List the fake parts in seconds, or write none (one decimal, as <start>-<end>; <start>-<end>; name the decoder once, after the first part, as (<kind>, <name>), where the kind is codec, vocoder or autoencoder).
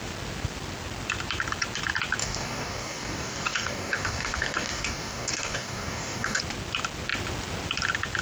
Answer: 2.2-6.4 (codec, DAC)